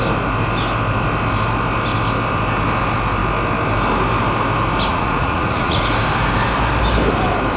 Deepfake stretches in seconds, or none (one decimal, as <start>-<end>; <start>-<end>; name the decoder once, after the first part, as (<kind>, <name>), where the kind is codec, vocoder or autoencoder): 4.9-5.8 (vocoder, Vocos)